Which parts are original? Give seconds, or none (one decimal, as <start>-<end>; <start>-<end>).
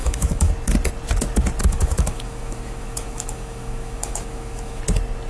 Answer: 0.5-1.6; 4.8-5.3